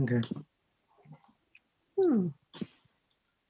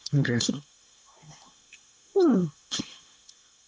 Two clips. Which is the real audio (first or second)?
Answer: first